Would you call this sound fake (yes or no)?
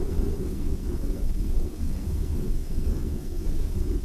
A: yes